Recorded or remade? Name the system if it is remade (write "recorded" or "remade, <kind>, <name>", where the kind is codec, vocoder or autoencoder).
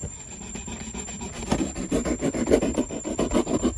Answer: recorded